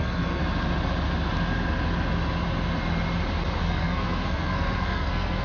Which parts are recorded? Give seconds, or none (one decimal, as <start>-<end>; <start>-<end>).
0.4-3.6